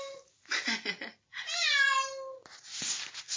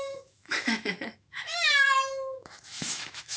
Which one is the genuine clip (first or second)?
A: first